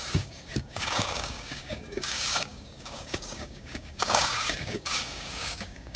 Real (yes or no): no